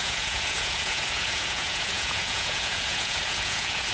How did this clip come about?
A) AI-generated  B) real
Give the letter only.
A